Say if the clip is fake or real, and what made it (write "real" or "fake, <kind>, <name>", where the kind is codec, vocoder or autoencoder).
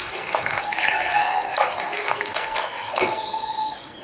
fake, codec, SNAC